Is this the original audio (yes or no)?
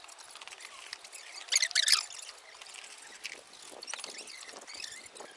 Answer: yes